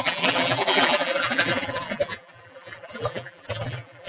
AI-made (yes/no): yes